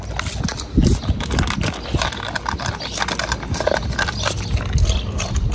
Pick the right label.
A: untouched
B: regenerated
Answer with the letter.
A